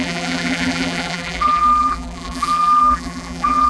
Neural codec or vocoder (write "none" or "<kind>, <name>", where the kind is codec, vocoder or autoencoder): vocoder, BigVGAN v2